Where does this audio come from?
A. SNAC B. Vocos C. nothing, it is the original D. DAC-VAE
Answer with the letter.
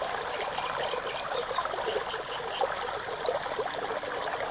C